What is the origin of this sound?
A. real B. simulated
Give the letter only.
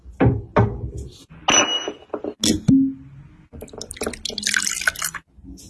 A